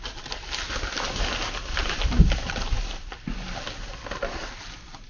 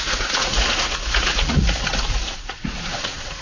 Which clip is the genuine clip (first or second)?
first